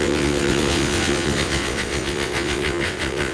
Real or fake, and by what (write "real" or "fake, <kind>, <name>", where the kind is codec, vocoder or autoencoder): fake, vocoder, WaveNeXt